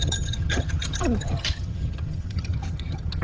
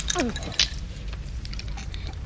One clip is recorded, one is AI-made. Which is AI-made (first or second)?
first